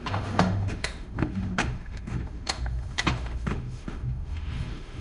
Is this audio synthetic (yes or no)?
yes